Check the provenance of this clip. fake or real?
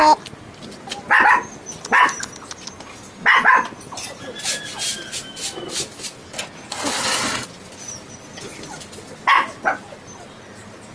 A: real